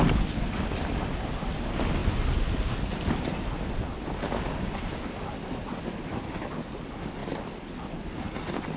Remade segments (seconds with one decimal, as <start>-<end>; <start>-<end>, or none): none

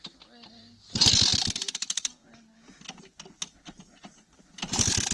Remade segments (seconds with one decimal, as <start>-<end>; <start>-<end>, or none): none

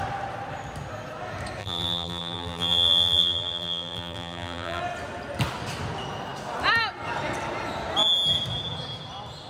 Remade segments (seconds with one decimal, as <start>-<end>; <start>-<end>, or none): 1.6-4.8

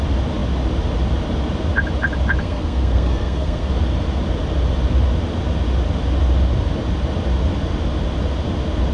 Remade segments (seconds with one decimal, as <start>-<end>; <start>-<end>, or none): 2.4-3.7

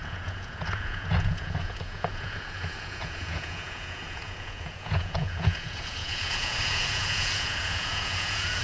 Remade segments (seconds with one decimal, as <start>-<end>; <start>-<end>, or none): 0.0-8.6

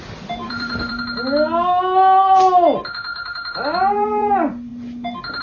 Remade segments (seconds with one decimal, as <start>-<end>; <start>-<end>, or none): 0.4-1.0; 3.1-4.3

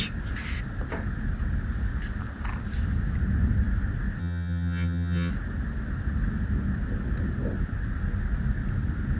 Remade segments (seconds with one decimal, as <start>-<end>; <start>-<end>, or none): 4.2-5.3

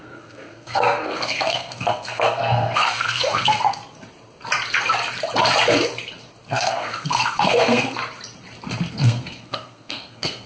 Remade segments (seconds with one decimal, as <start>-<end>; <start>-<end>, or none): 0.0-3.8; 6.5-8.0; 8.9-10.5